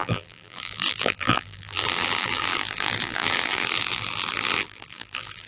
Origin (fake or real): fake